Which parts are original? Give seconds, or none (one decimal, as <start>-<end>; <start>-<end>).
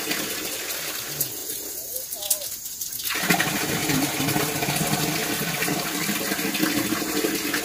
0.0-7.6